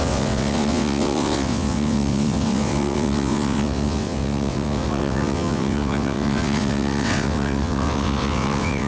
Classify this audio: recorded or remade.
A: remade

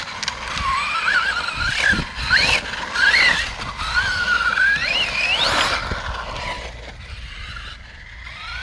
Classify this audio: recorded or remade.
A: recorded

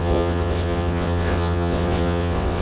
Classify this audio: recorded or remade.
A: remade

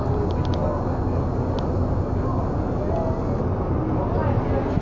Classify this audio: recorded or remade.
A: recorded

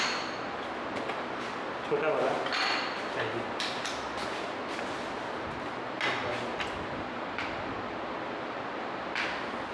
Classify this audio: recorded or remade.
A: recorded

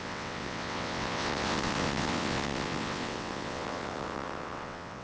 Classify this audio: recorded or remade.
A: remade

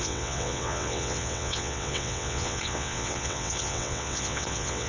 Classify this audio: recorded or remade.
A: remade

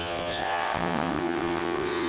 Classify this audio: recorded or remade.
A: remade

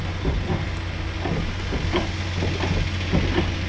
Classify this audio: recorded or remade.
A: recorded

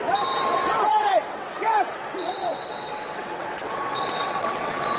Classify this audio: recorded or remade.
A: remade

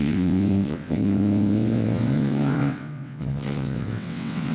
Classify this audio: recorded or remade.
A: remade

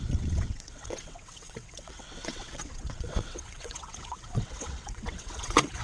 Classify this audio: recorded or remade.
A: remade